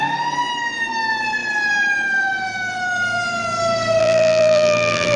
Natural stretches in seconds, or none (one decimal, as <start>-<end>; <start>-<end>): 0.0-4.0